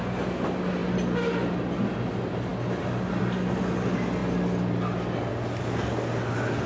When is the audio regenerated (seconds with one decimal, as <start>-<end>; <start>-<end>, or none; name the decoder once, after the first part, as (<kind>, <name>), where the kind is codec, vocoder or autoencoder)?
none